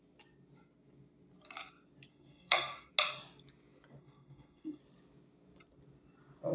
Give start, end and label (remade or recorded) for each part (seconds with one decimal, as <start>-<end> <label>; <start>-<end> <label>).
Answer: 0.0-2.1 recorded; 2.1-2.9 remade; 2.9-4.0 recorded; 4.0-4.8 remade; 4.8-6.5 recorded

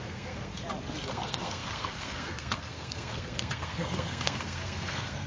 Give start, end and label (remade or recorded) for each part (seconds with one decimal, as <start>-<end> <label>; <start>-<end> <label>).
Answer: 0.0-0.5 remade; 0.5-1.1 recorded; 1.1-5.3 remade